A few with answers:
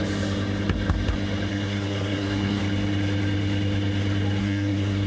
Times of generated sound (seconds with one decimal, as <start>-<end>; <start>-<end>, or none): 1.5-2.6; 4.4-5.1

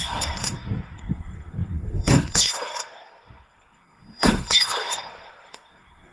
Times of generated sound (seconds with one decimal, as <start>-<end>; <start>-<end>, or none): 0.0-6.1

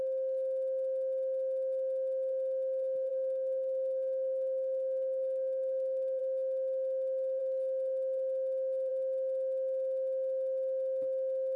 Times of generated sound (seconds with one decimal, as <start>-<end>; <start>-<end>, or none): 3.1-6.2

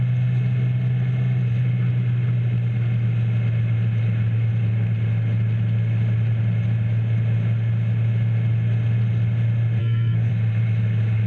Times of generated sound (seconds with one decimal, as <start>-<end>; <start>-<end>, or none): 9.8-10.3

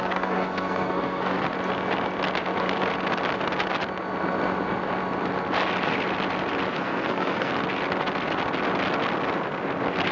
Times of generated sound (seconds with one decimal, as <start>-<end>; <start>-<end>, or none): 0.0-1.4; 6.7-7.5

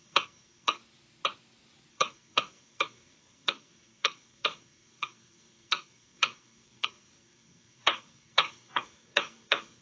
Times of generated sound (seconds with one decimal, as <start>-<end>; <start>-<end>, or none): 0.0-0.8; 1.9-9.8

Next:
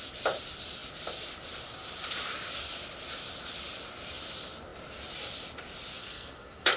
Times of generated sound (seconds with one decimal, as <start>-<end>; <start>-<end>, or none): 6.0-6.8